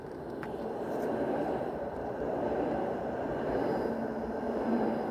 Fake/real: fake